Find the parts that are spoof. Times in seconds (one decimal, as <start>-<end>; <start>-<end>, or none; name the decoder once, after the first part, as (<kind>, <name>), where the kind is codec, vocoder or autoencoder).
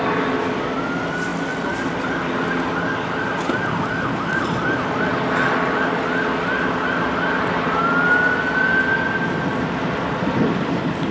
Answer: none